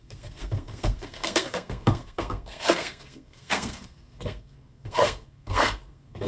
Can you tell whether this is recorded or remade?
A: remade